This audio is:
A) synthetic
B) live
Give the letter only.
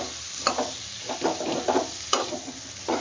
B